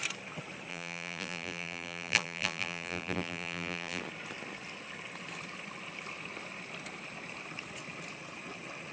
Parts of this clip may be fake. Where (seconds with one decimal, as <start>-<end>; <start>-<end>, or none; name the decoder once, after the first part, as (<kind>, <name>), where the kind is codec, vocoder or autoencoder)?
0.7-4.0 (vocoder, BigVGAN v2)